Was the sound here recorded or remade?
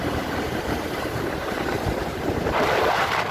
remade